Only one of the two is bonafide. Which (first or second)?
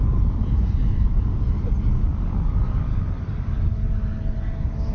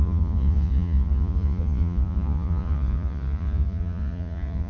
first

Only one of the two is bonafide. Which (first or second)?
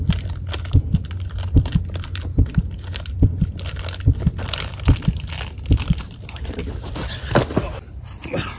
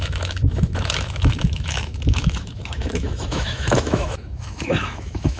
first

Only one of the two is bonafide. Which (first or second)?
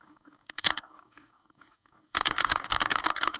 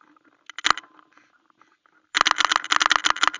second